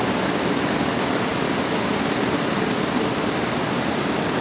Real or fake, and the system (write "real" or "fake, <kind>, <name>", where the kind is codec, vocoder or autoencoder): real